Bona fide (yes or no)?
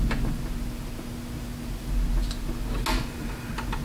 yes